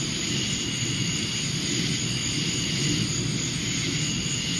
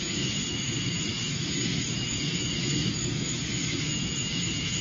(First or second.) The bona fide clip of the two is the first